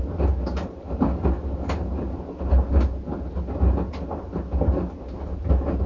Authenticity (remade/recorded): recorded